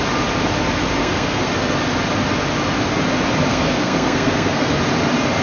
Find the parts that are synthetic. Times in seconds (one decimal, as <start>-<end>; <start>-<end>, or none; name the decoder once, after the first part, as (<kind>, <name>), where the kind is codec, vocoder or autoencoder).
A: 1.0-1.5 (codec, SNAC); 3.5-4.8